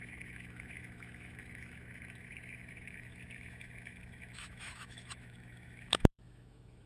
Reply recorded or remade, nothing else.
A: remade